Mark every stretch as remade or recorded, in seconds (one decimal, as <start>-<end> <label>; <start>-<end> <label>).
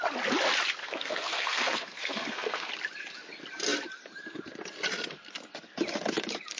0.0-0.8 recorded; 0.8-2.7 remade; 2.7-6.6 recorded